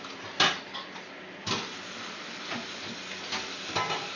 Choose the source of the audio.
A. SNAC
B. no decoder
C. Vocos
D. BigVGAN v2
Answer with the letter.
B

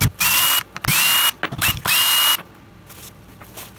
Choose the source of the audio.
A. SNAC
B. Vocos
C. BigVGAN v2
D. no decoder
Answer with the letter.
D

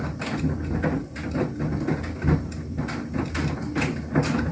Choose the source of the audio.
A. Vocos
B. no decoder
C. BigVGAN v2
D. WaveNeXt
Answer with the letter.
B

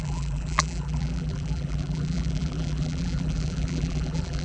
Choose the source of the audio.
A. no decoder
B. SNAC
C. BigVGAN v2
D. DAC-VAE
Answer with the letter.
C